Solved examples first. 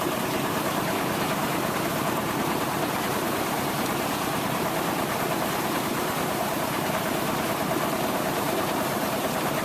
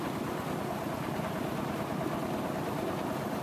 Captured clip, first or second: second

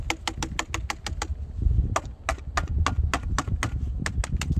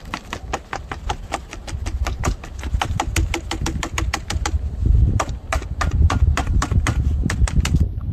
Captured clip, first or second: first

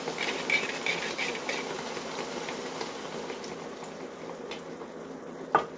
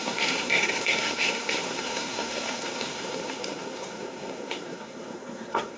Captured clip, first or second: first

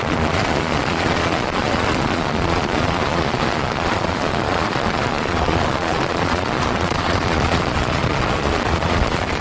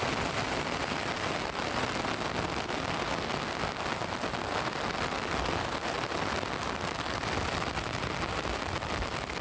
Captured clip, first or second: second